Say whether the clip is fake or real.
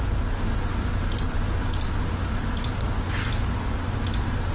real